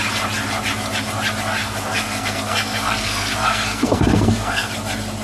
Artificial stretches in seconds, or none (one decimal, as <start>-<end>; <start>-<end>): 1.6-4.7